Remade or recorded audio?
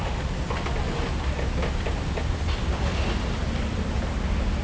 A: recorded